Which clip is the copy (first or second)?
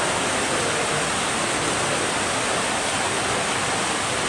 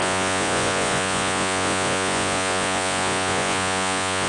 second